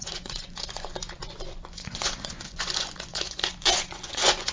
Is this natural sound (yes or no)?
no